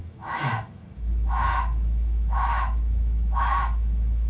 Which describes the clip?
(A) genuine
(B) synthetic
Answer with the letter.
B